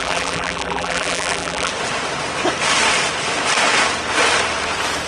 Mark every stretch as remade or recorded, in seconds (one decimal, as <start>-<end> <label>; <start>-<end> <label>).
0.0-1.7 remade; 1.7-5.1 recorded